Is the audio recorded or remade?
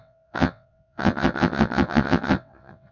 remade